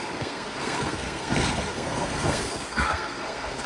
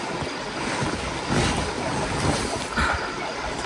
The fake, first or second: first